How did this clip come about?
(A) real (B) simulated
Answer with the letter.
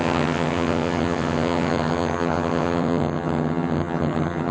B